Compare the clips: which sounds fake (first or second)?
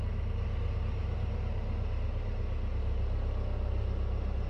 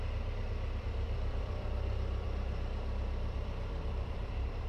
second